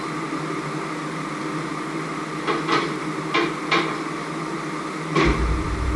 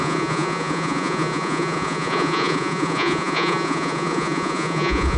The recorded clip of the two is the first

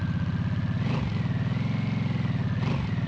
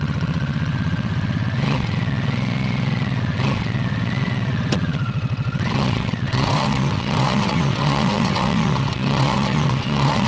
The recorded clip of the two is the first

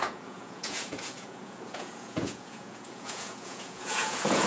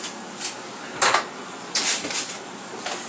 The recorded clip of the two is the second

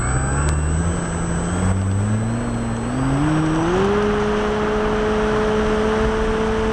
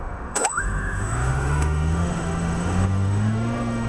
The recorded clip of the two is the first